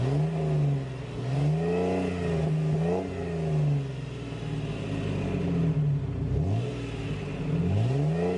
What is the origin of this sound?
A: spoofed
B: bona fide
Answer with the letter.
B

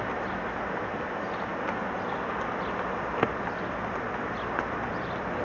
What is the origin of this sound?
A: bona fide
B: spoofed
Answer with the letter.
A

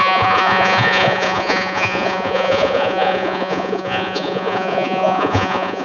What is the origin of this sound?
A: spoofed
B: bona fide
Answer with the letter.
A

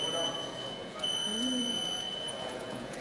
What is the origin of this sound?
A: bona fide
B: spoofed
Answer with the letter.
B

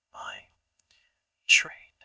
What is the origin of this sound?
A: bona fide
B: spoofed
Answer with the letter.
B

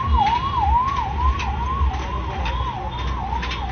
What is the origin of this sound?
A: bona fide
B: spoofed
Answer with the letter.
A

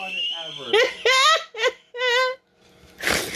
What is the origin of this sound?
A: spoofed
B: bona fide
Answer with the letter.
B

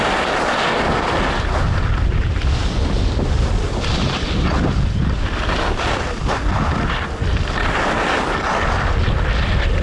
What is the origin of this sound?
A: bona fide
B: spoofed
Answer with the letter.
A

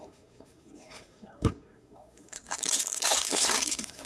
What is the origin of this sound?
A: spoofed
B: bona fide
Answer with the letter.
A